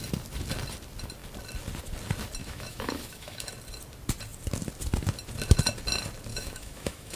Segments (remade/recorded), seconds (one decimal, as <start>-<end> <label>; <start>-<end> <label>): 0.0-2.4 recorded; 2.4-3.5 remade; 3.5-6.3 recorded; 6.3-7.2 remade

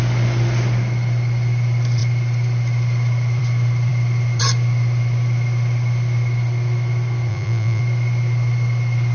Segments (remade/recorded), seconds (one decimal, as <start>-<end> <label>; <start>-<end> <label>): 0.0-7.3 recorded; 7.3-7.8 remade; 7.8-9.1 recorded

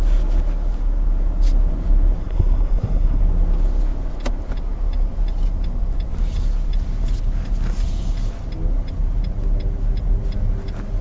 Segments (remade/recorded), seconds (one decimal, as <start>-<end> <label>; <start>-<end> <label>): 0.0-2.2 recorded; 2.2-3.2 remade; 3.2-11.0 recorded

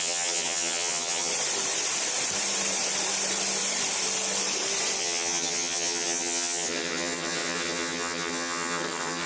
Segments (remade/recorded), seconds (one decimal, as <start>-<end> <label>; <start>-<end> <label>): 0.0-1.3 remade; 1.3-5.0 recorded; 5.0-9.3 remade

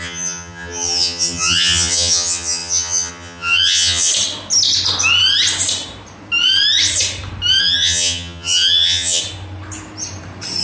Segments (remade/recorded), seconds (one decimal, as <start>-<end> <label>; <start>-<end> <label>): 0.0-4.1 remade; 4.1-7.6 recorded; 7.6-9.2 remade; 9.2-10.6 recorded

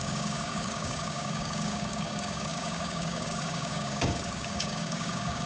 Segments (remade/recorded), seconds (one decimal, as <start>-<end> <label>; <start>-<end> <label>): 0.0-5.5 remade